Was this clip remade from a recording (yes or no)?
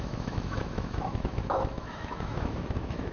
yes